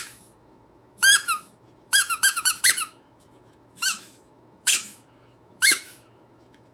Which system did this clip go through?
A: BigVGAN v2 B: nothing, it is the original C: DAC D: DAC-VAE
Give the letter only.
D